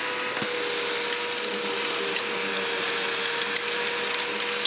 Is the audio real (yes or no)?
yes